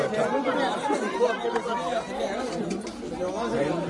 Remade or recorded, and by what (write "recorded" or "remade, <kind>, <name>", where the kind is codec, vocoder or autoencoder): remade, vocoder, BigVGAN v2